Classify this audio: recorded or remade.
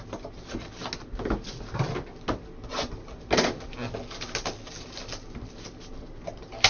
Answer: recorded